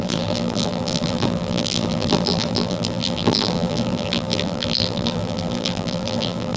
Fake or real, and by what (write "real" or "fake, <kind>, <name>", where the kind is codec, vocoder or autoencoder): fake, vocoder, BigVGAN v2